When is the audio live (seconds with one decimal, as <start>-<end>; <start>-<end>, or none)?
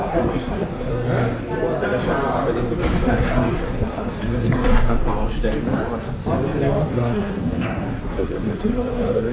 0.9-3.1; 5.0-6.8